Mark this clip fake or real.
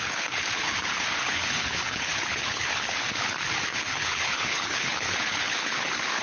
fake